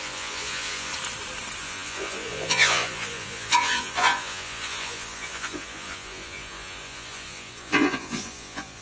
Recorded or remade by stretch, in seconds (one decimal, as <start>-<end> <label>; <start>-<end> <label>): 0.0-0.9 remade; 0.9-1.6 recorded; 1.6-8.8 remade